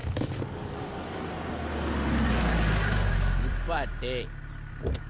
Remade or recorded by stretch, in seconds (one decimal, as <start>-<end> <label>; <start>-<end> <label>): 0.0-1.3 remade; 1.3-5.1 recorded